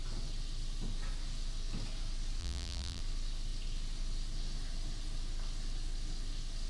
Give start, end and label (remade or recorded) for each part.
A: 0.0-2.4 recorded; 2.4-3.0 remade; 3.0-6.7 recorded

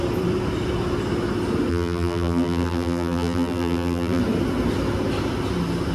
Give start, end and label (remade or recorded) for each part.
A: 0.0-1.7 recorded; 1.7-4.2 remade; 4.2-5.9 recorded

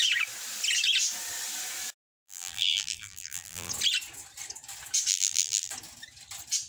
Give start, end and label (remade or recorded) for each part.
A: 0.0-2.2 recorded; 2.2-3.7 remade; 3.7-5.1 recorded; 5.1-5.7 remade; 5.7-6.7 recorded

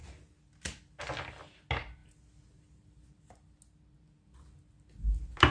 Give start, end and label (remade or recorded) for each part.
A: 0.0-5.5 recorded

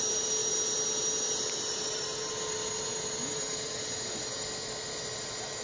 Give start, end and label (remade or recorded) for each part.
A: 0.0-5.6 remade

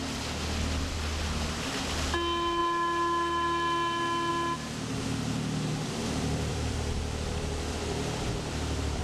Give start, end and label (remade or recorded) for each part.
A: 0.0-5.7 recorded; 5.7-9.0 remade